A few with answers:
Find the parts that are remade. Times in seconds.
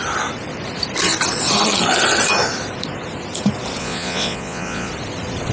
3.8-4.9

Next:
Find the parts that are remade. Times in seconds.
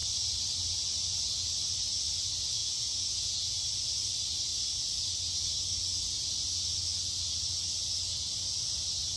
2.6-3.5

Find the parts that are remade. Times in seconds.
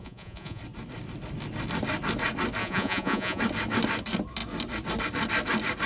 0.0-0.6; 2.6-3.4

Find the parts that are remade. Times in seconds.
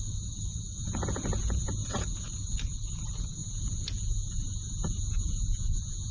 0.0-6.1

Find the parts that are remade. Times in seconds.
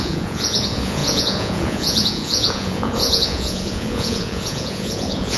0.0-5.4